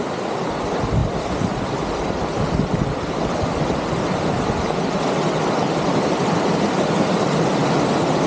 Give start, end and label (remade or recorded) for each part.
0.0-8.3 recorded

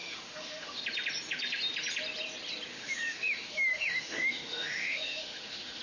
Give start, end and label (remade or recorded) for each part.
0.0-0.8 remade; 0.8-2.7 recorded; 2.7-5.8 remade

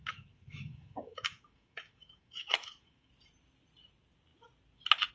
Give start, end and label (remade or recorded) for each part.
0.0-3.1 remade; 3.1-5.1 recorded

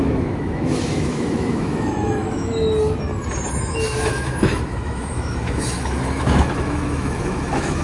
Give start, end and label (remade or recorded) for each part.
0.0-2.5 remade; 2.5-3.6 recorded; 3.6-7.8 remade

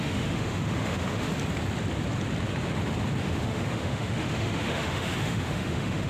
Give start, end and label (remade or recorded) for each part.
0.0-1.3 remade; 1.3-3.2 recorded; 3.2-6.1 remade